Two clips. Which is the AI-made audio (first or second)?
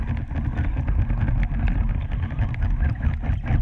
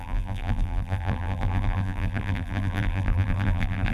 second